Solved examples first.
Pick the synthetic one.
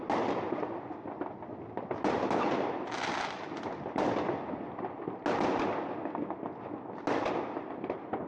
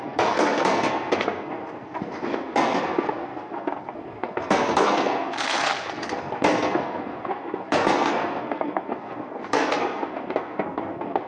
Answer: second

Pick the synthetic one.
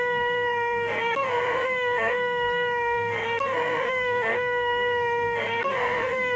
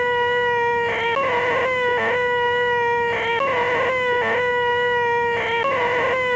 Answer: first